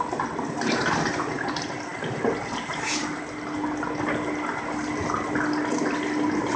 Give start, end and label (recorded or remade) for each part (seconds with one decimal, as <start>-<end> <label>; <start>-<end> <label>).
0.0-6.6 recorded